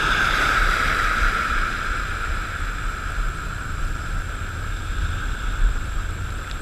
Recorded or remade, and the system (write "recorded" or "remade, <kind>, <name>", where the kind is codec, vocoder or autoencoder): recorded